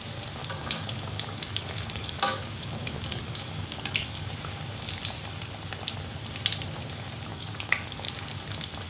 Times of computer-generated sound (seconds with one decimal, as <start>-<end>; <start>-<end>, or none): 0.4-4.3; 7.3-8.1